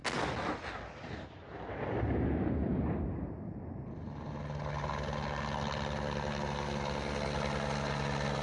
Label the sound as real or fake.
real